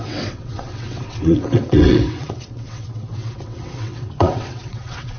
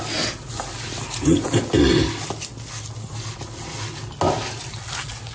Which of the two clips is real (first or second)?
second